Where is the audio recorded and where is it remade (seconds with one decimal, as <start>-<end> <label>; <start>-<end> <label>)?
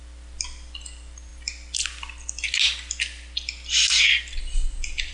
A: 0.0-5.1 recorded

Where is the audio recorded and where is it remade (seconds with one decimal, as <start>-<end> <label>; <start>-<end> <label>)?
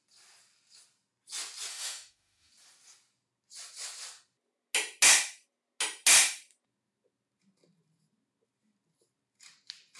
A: 0.0-1.7 recorded; 1.7-2.5 remade; 2.5-10.0 recorded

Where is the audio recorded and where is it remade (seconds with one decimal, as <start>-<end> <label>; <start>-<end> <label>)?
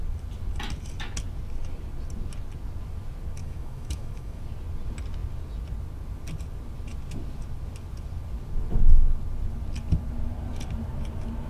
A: 0.0-3.4 recorded; 3.4-4.4 remade; 4.4-11.5 recorded